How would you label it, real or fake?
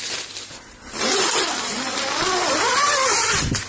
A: real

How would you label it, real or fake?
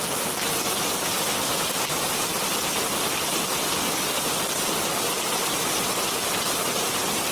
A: real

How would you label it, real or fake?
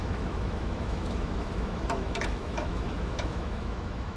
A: fake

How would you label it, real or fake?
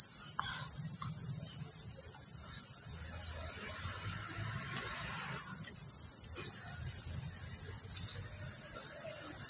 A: real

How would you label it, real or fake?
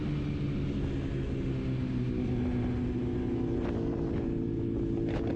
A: real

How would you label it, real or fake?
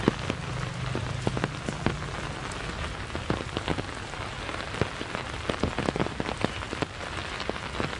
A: real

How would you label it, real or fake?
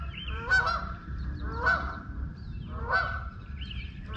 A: fake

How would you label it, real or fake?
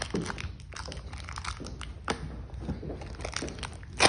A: real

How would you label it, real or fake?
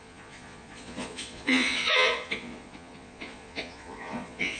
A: fake